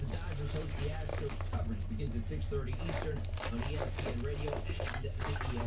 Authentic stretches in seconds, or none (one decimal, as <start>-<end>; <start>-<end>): 0.0-5.7